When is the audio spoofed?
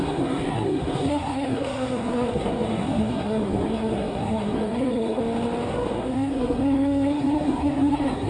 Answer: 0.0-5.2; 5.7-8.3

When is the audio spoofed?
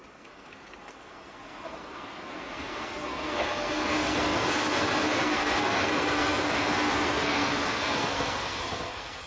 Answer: 0.0-9.3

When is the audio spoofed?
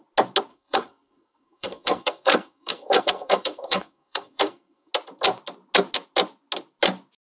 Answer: 0.5-4.9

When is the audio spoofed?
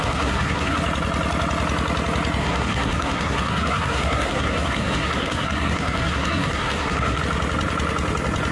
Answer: 0.0-0.8; 2.4-7.2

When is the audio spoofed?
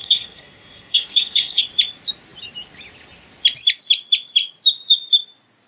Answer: 0.0-1.6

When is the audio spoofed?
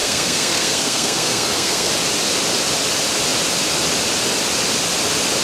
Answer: 0.0-1.9